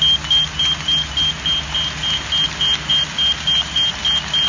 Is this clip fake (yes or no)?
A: no